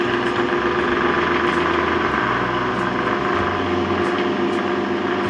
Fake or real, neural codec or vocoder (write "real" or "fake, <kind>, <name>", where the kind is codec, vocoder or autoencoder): real